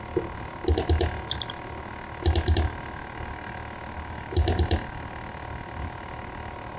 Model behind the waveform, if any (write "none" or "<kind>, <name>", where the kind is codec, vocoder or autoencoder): none